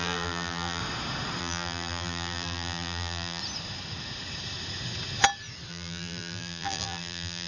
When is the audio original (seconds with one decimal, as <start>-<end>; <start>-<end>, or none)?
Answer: 0.8-1.4; 3.4-5.7